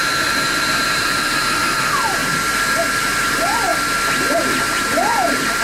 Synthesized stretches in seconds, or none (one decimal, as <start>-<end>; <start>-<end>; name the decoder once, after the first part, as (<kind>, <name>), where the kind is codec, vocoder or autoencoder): 0.0-2.2 (vocoder, BigVGAN v2); 3.3-3.7; 4.6-5.6